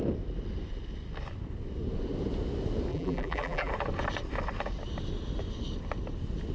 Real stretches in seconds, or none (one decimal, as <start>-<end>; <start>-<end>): 0.0-2.9; 3.7-6.5